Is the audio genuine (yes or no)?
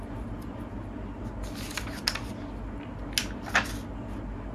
yes